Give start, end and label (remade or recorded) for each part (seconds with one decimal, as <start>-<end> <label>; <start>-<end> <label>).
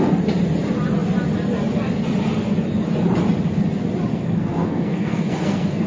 0.0-4.1 recorded; 4.1-5.9 remade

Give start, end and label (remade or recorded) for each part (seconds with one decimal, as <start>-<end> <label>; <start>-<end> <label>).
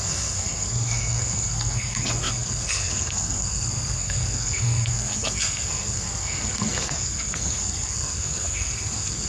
0.0-9.3 remade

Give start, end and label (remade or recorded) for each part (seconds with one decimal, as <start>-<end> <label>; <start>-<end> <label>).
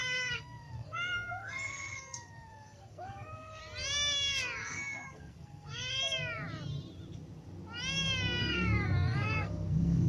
0.0-3.6 remade; 3.6-4.6 recorded; 4.6-6.0 remade; 6.0-8.4 recorded; 8.4-10.1 remade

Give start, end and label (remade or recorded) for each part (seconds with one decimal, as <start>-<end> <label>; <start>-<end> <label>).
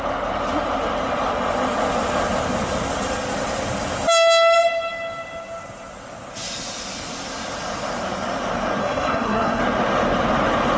0.0-8.8 recorded; 8.8-9.6 remade; 9.6-10.8 recorded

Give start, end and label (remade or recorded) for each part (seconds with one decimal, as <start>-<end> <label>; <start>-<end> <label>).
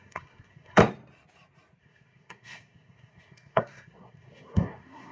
0.0-0.8 remade; 0.8-1.8 recorded; 1.8-5.1 remade